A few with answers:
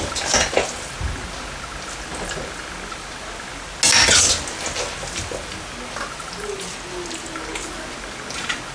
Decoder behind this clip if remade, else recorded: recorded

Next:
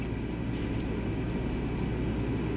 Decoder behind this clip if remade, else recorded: recorded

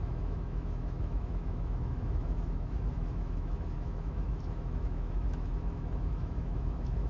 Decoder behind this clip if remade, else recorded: remade, autoencoder, DAC-VAE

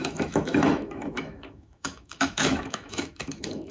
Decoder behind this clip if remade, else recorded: remade, autoencoder, DAC-VAE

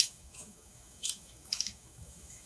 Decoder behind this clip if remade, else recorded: remade, autoencoder, DAC-VAE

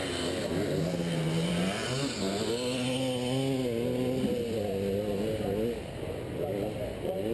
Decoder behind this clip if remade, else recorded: recorded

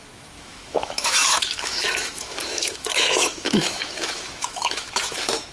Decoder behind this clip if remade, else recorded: remade, autoencoder, DAC-VAE